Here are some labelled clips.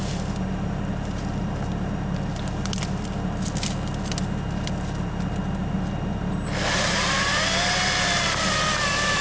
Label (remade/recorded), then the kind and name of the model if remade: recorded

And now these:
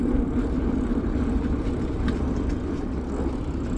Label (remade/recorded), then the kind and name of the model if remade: recorded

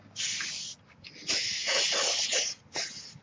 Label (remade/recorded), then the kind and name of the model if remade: recorded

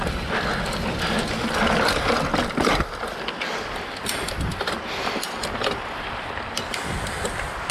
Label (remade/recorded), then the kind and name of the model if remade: recorded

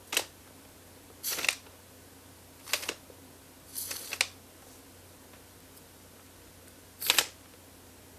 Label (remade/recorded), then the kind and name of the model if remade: recorded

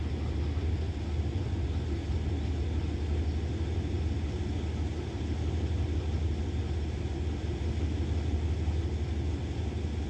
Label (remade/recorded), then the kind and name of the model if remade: recorded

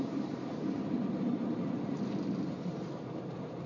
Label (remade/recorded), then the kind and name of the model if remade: remade, vocoder, BigVGAN v2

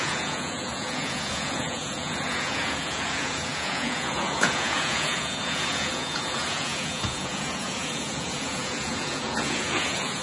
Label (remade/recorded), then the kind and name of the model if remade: remade, vocoder, Vocos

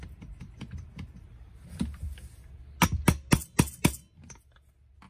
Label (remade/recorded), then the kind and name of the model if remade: recorded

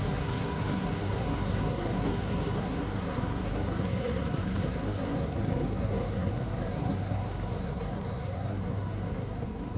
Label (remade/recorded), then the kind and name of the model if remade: remade, codec, SNAC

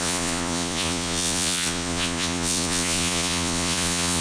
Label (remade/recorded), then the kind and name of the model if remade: remade, vocoder, Vocos